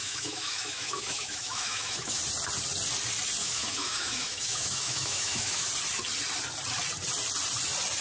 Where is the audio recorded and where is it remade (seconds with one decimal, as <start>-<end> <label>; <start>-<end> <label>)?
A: 0.0-2.2 remade; 2.2-3.4 recorded; 3.4-5.7 remade; 5.7-8.0 recorded